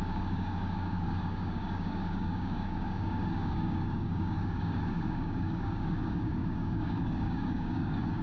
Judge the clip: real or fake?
fake